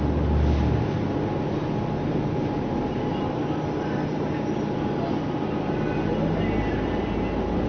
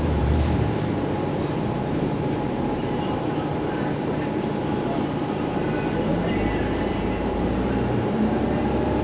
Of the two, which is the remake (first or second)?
second